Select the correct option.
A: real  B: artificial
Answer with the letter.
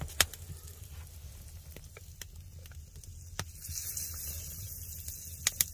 A